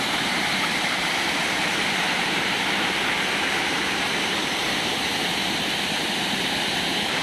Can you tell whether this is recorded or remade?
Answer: remade